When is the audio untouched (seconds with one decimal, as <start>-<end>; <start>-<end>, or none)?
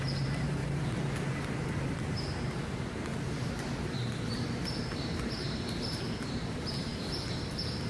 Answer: none